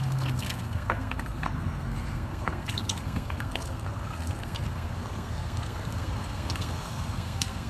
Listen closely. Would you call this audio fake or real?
fake